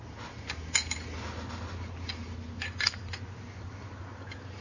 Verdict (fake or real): real